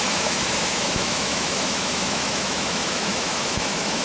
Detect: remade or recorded remade